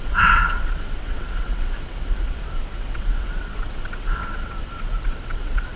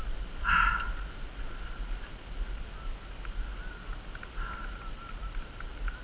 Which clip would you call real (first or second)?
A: second